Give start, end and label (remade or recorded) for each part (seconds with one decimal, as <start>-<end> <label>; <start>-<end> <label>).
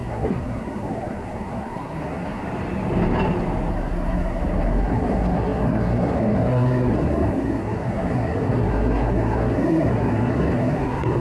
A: 0.0-2.4 remade; 2.4-3.7 recorded; 3.7-11.2 remade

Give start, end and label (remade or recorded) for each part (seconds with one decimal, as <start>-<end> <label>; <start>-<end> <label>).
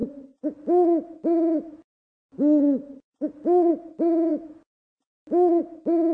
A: 0.0-6.1 recorded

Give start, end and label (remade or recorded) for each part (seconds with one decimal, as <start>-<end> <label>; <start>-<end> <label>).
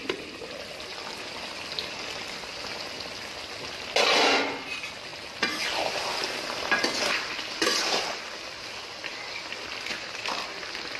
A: 0.0-11.0 recorded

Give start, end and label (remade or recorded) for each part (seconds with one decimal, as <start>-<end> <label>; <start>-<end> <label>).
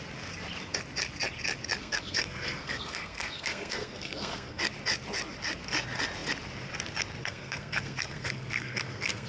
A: 0.0-1.8 recorded; 1.8-4.6 remade; 4.6-7.2 recorded; 7.2-9.3 remade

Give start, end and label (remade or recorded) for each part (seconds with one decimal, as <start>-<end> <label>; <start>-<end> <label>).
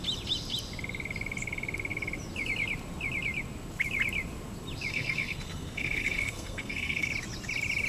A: 0.0-4.9 recorded; 4.9-7.1 remade; 7.1-7.9 recorded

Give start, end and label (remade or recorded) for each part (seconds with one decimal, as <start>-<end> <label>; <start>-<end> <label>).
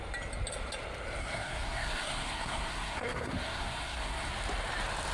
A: 0.0-1.2 recorded; 1.2-4.3 remade; 4.3-5.1 recorded